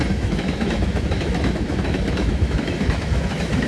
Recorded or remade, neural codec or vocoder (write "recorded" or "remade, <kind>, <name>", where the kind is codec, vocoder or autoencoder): remade, autoencoder, DAC-VAE